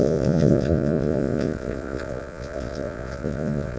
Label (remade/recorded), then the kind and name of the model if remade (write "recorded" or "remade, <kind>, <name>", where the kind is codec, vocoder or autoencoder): remade, vocoder, Vocos